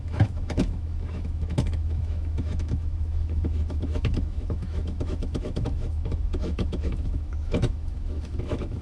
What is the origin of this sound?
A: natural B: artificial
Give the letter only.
B